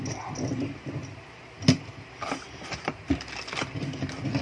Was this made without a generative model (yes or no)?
yes